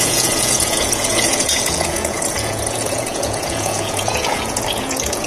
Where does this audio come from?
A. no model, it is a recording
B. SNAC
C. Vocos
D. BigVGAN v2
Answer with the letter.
C